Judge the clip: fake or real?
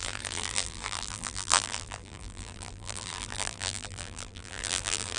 fake